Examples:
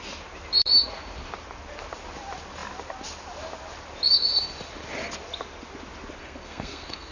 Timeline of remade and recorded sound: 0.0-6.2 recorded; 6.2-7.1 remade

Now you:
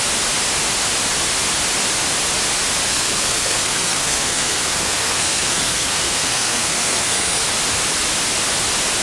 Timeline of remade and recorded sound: 0.0-2.9 recorded; 2.9-7.4 remade; 7.4-9.0 recorded

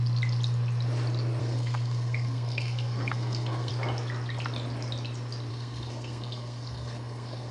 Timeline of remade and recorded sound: 0.0-1.4 recorded; 1.4-3.7 remade; 3.7-5.5 recorded; 5.5-7.5 remade

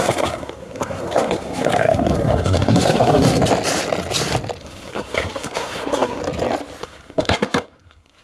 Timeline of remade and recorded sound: 0.0-3.4 remade; 3.4-4.6 recorded; 4.6-6.2 remade; 6.2-6.8 recorded; 6.8-8.2 remade

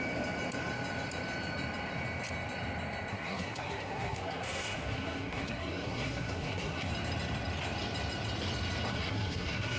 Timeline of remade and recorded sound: 0.0-3.1 recorded; 3.1-6.9 remade; 6.9-8.9 recorded; 8.9-9.8 remade

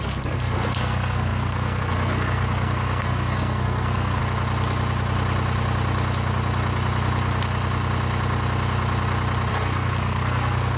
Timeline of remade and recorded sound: 0.0-4.2 remade; 4.2-9.5 recorded; 9.5-10.8 remade

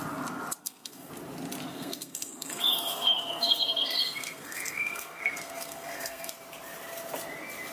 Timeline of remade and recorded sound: 0.0-0.6 recorded; 0.6-1.1 remade; 1.1-1.7 recorded; 1.7-6.3 remade; 6.3-7.7 recorded

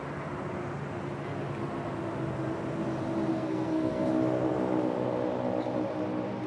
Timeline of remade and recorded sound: 0.0-3.3 recorded; 3.3-4.1 remade; 4.1-6.5 recorded